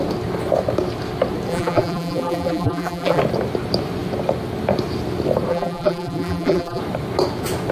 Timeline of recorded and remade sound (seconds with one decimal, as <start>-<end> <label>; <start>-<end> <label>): 0.0-1.5 recorded; 1.5-3.2 remade; 3.2-5.5 recorded; 5.5-6.8 remade; 6.8-7.7 recorded